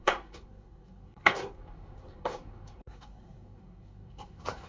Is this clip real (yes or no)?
no